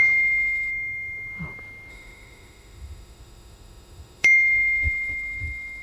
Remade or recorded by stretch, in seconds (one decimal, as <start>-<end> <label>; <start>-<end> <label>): 0.0-0.7 remade; 0.7-1.9 recorded; 1.9-5.8 remade